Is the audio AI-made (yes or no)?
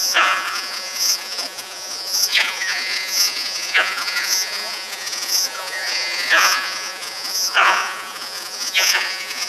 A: yes